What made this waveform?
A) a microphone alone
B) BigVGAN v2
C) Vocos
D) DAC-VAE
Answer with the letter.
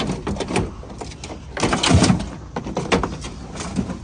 A